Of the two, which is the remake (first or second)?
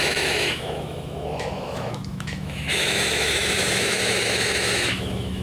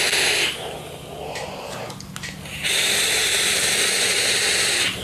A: first